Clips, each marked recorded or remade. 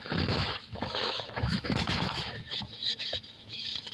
remade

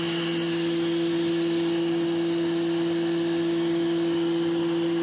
recorded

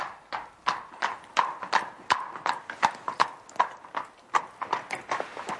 recorded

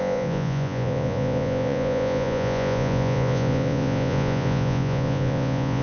remade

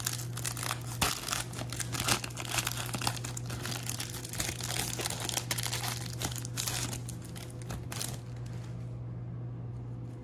recorded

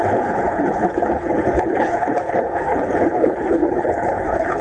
remade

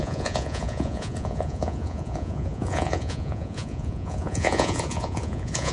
remade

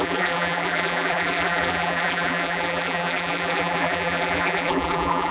remade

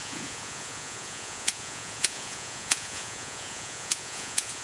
remade